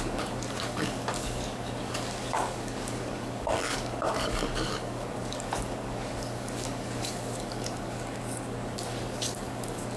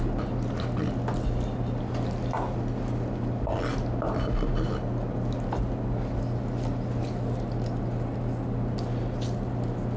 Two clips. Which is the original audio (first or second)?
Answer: second